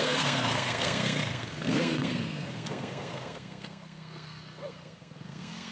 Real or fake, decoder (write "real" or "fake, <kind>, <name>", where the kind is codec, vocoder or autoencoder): fake, codec, SNAC